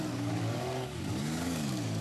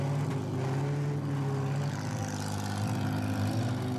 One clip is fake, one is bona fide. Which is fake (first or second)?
first